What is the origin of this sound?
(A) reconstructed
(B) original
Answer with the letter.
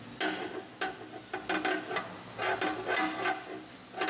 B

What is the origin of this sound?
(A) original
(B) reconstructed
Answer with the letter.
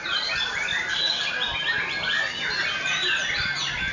A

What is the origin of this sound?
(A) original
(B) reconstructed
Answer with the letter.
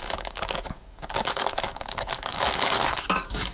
B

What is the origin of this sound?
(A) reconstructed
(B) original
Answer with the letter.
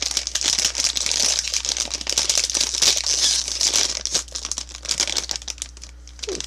B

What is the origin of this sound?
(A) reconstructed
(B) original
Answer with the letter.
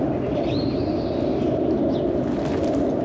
B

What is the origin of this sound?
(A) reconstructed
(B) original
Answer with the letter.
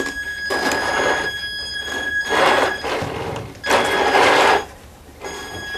B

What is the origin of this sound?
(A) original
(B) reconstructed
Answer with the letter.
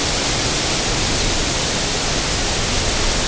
A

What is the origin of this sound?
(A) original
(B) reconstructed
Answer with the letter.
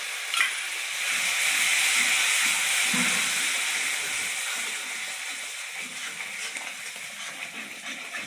A